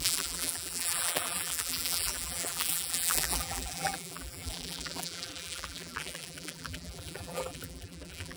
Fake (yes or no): yes